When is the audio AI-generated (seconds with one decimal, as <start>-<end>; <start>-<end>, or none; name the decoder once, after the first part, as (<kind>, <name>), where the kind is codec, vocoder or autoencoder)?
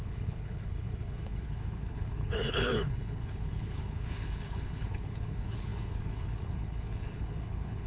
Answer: 0.0-7.9 (codec, HILCodec)